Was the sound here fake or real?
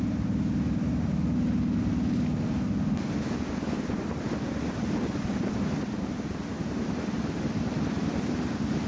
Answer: real